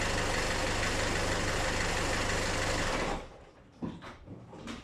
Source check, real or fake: real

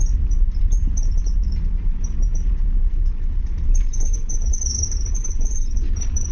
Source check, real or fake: fake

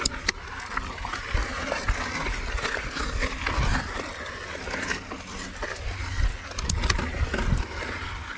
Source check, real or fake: real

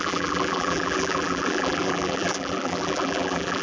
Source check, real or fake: fake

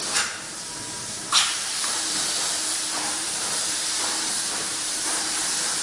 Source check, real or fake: fake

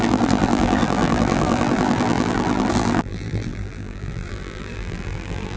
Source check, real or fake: fake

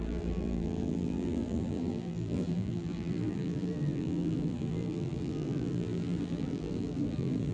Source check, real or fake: fake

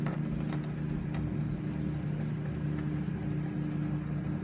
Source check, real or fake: real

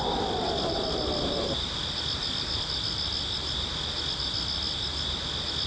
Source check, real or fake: real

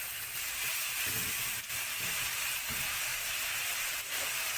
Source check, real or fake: real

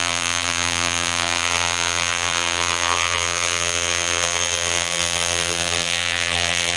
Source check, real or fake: fake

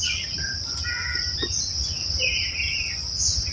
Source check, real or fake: real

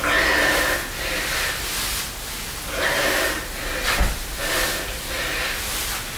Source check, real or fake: real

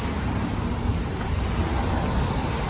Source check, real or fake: real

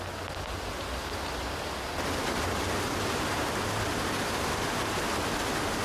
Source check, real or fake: real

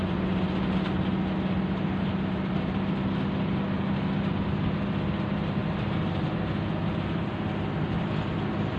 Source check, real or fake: real